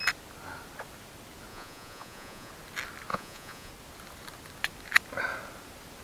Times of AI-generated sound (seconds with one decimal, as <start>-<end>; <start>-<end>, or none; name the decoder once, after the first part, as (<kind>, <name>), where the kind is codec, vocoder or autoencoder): 1.5-2.5 (vocoder, Vocos); 3.1-3.7